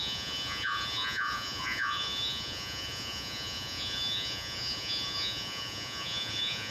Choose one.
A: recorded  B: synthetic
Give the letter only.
B